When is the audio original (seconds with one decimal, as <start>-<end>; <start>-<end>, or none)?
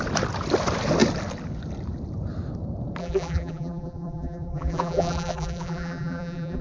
0.0-3.0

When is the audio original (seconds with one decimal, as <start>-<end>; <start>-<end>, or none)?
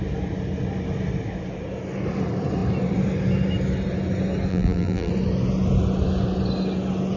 0.0-4.5; 5.1-7.2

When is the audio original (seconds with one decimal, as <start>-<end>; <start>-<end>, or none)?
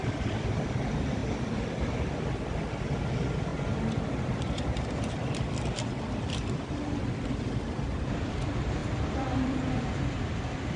1.2-3.0; 3.5-4.2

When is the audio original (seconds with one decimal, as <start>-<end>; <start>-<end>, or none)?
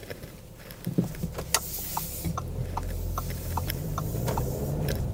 0.5-1.9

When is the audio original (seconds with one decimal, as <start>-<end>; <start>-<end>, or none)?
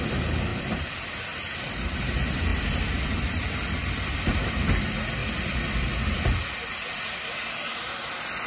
0.0-0.5; 2.0-2.5; 4.5-5.2; 7.1-8.5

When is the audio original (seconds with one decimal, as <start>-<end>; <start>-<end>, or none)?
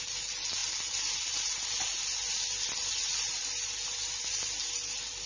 0.0-5.3